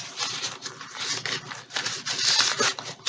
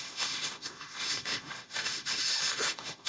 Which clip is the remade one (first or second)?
second